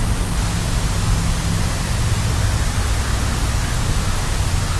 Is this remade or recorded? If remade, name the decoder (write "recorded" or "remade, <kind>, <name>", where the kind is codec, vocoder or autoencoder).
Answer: recorded